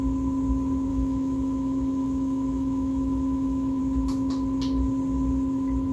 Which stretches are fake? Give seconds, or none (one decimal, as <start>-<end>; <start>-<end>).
0.9-3.8

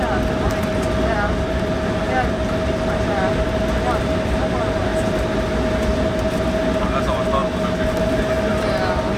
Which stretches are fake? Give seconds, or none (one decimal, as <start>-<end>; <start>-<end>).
none

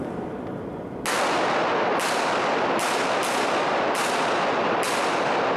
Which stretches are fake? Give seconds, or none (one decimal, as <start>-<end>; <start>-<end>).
none

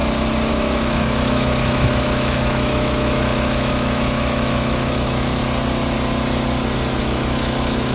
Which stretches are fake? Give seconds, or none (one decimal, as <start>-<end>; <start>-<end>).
0.5-5.4; 7.0-7.9

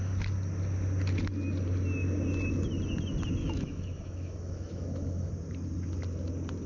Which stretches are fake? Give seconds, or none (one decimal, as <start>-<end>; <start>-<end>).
3.4-5.3

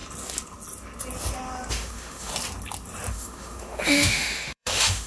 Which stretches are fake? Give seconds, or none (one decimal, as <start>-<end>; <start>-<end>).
1.7-2.3; 3.1-5.1

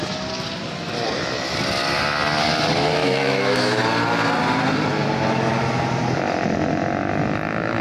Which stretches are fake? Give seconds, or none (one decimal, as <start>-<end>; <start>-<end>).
3.0-3.8

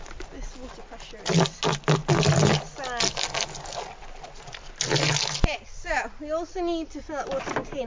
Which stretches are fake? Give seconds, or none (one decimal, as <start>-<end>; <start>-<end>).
none